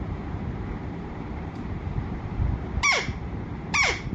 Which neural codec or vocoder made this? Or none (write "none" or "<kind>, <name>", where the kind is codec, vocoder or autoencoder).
vocoder, BigVGAN v2